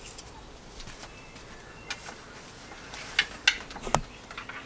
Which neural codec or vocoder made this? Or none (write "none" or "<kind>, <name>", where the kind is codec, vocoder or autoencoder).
none